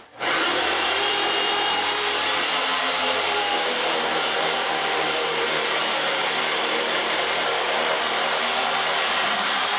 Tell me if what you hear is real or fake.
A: fake